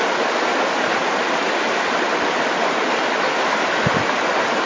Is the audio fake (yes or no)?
no